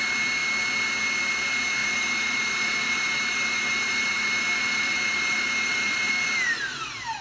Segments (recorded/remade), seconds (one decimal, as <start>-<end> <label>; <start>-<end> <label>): 0.0-1.8 recorded; 1.8-6.1 remade; 6.1-7.2 recorded